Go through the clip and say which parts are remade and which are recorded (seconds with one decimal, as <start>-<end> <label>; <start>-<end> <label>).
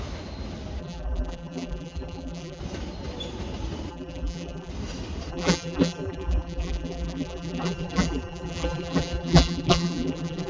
0.0-0.8 recorded; 0.8-2.6 remade; 2.6-3.9 recorded; 3.9-4.7 remade; 4.7-5.3 recorded; 5.3-10.5 remade